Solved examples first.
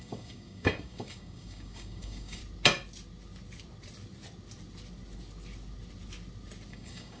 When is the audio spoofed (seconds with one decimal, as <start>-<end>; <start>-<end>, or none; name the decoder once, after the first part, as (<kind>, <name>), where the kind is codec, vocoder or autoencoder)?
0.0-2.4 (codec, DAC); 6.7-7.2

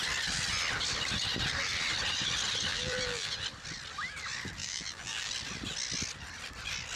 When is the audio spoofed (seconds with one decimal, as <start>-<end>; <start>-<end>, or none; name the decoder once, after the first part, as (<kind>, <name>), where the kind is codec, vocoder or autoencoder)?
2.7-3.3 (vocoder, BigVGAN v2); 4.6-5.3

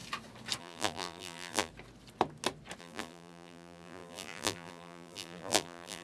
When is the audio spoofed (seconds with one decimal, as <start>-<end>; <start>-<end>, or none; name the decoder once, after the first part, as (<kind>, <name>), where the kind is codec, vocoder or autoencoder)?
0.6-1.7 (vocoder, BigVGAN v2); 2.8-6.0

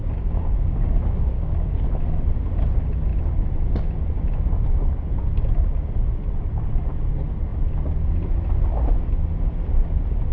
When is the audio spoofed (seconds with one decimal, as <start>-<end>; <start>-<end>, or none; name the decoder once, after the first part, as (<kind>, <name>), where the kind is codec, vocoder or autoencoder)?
0.0-1.7 (codec, DAC)